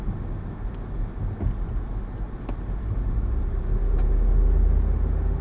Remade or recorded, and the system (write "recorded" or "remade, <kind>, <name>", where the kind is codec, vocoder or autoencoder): recorded